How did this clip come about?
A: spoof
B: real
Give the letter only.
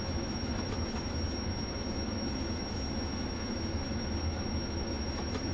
A